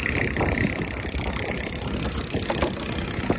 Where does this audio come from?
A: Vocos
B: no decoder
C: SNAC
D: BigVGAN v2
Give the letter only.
B